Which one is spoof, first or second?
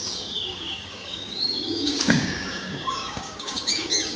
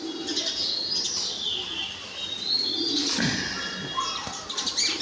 first